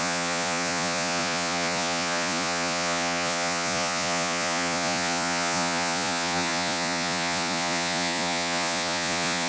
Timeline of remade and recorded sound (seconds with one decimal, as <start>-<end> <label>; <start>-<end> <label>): 0.0-9.5 remade